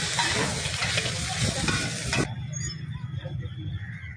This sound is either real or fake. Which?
real